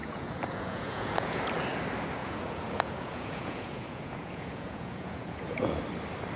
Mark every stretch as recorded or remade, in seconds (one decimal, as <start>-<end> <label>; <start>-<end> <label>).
0.0-1.4 remade; 1.4-2.2 recorded; 2.2-5.8 remade; 5.8-6.4 recorded